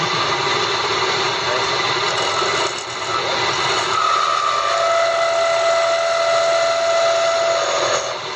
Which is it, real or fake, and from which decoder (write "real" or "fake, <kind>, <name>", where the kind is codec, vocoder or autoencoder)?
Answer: real